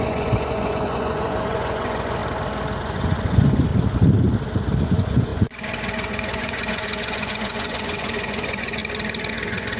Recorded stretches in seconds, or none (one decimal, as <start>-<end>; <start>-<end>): 2.2-2.8; 3.7-4.8; 8.8-9.3